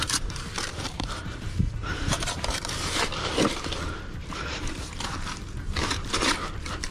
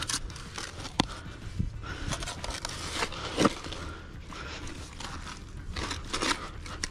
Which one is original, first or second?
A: second